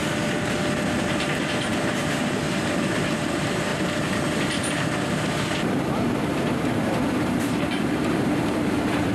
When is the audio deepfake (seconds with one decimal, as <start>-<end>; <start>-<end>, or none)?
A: 0.9-9.1